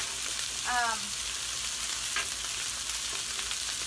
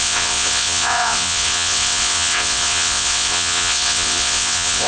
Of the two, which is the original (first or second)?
first